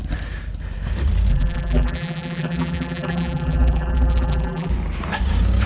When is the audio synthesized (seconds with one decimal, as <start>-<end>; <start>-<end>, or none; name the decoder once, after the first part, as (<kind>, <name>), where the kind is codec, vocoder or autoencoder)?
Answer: 1.3-4.7 (vocoder, BigVGAN v2)